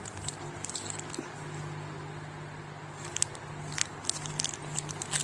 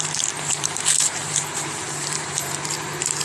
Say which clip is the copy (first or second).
second